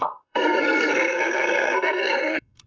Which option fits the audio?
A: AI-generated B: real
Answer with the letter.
A